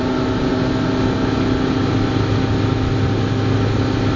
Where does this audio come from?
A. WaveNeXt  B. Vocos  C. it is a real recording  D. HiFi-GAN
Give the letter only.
C